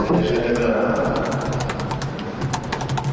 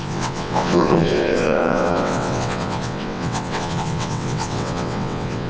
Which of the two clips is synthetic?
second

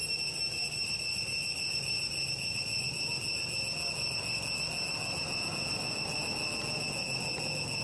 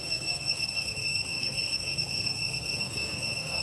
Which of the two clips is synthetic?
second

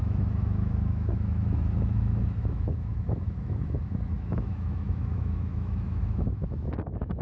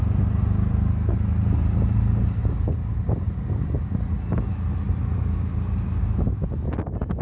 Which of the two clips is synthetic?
first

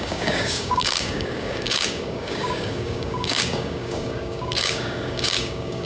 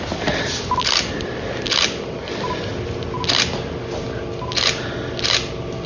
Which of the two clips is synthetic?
first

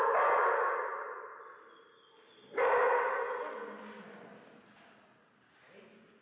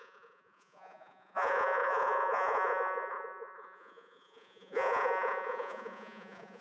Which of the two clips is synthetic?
second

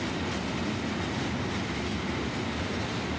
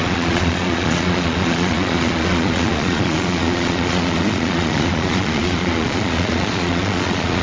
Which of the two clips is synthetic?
second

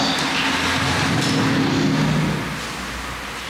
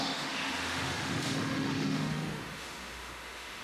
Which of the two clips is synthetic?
second